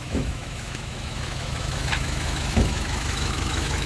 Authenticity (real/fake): fake